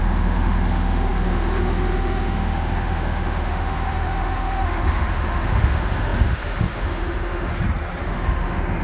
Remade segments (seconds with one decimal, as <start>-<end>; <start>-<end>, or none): 0.0-7.5; 8.0-8.8